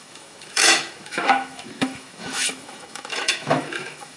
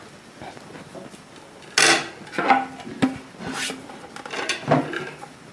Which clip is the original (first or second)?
second